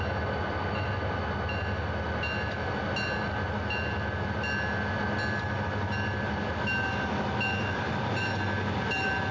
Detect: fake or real real